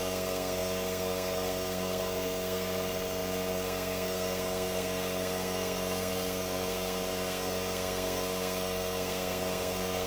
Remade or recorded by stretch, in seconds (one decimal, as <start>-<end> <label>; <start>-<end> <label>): 0.0-10.1 remade